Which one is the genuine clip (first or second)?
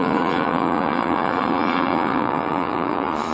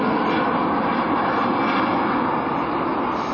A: second